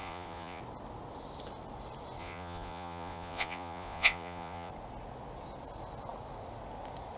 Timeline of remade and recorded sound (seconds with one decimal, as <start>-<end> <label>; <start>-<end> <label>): 0.0-0.6 remade; 0.6-2.2 recorded; 2.2-4.7 remade; 4.7-7.2 recorded